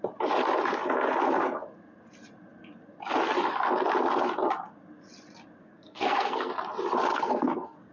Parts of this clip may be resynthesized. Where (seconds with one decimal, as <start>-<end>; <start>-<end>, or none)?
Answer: 5.6-6.5; 7.1-7.9